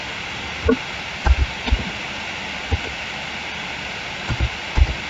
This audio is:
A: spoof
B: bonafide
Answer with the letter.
B